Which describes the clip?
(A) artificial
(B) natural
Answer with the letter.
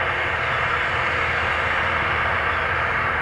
B